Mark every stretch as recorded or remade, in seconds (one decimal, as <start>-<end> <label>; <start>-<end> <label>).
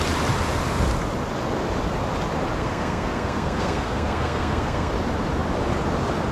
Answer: 0.0-2.6 recorded; 2.6-4.9 remade; 4.9-6.3 recorded